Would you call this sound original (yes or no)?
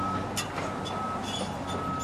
yes